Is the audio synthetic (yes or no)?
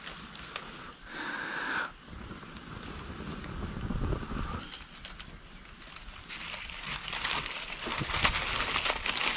no